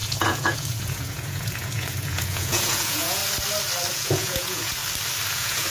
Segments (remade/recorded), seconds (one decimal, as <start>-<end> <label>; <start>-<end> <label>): 0.0-3.2 remade; 3.2-3.9 recorded; 3.9-4.8 remade; 4.8-5.3 recorded; 5.3-5.7 remade